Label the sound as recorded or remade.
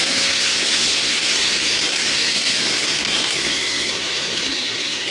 remade